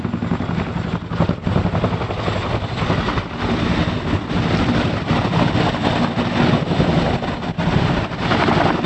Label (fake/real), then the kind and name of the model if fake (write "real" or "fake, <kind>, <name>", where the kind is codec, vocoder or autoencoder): real